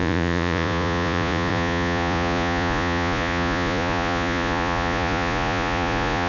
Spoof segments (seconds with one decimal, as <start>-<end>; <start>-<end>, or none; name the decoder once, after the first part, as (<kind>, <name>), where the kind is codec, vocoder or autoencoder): 0.0-6.3 (vocoder, Vocos)

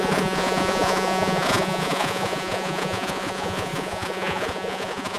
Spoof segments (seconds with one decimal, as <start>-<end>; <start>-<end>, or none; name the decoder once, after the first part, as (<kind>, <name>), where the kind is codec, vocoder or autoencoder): 0.0-5.2 (vocoder, Vocos)

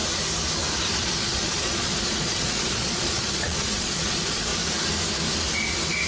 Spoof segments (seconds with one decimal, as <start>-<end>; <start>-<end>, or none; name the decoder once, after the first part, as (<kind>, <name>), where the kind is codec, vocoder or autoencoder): 1.0-4.5 (vocoder, Vocos)